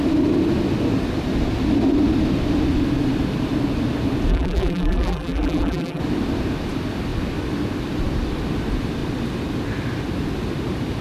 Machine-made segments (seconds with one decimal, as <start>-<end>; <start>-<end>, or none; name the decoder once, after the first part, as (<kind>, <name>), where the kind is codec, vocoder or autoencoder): 4.3-6.0 (vocoder, BigVGAN v2)